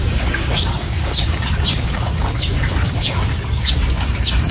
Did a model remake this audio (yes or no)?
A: yes